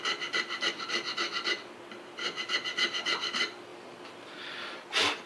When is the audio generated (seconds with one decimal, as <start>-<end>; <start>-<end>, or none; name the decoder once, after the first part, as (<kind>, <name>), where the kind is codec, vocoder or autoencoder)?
none